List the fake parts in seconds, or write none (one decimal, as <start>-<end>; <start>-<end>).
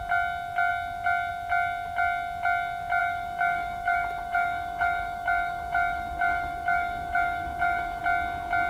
3.0-8.0